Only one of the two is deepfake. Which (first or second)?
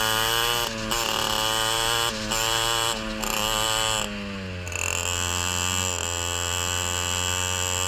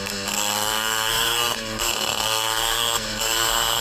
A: second